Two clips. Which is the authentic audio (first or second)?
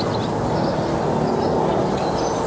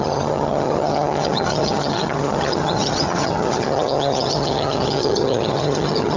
first